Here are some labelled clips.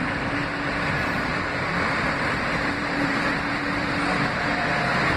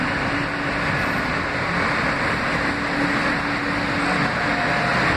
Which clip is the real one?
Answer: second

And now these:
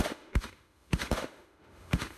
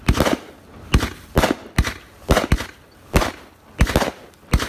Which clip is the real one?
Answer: second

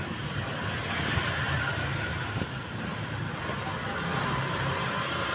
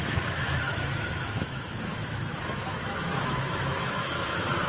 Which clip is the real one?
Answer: first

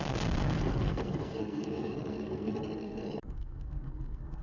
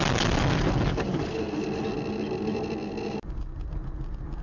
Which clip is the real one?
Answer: second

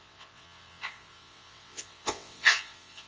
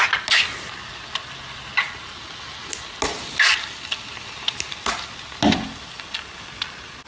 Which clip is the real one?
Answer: second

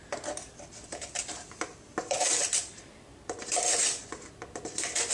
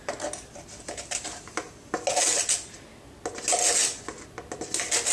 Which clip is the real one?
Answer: second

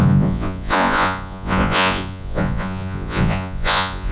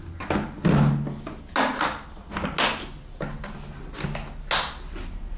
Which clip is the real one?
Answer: second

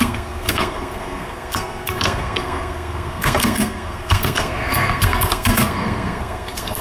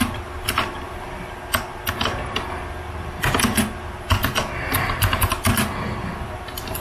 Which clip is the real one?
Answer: second